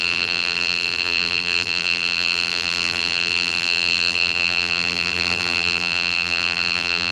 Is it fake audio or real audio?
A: fake